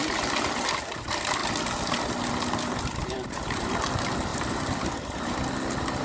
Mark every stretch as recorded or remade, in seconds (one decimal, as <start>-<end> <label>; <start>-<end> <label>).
0.0-3.0 recorded; 3.0-3.7 remade; 3.7-4.3 recorded; 4.3-5.4 remade; 5.4-6.0 recorded